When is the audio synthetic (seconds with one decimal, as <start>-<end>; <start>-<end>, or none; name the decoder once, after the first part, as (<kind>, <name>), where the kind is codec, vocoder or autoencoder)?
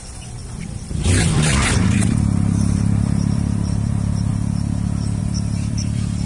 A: 0.0-4.3 (vocoder, BigVGAN v2); 5.2-6.3